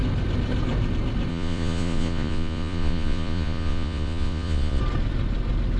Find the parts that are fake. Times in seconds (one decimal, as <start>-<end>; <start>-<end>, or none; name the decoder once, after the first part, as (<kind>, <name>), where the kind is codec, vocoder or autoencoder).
1.3-4.8 (vocoder, Vocos)